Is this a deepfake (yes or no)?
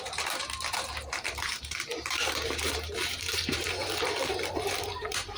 yes